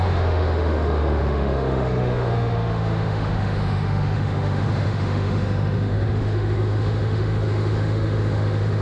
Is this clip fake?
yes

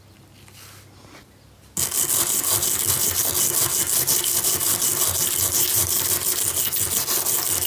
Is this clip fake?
no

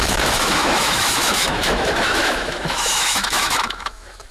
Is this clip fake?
yes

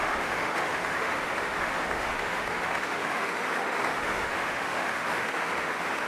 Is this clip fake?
yes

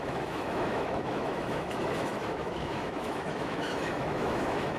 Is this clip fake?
yes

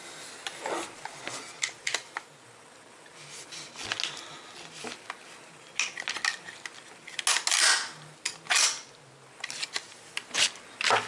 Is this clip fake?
no